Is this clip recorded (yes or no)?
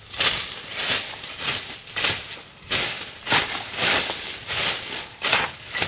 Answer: yes